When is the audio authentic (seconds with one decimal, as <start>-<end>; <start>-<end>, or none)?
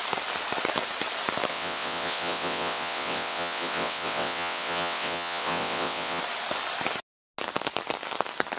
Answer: 0.0-1.5; 6.2-8.6